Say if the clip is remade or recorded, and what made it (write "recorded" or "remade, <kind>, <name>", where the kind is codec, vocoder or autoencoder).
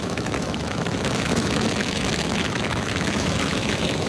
remade, autoencoder, DAC-VAE